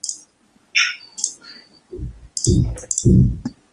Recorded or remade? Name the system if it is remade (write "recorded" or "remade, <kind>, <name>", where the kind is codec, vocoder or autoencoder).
recorded